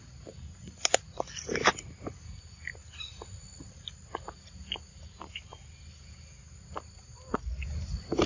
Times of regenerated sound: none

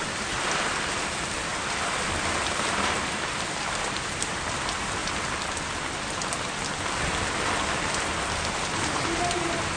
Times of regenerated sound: 0.0-1.5 (vocoder, BigVGAN v2); 2.4-5.0; 8.4-9.8